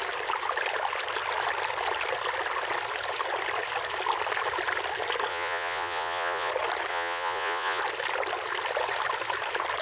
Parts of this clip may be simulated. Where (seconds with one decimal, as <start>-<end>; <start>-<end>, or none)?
5.3-6.5; 6.9-7.8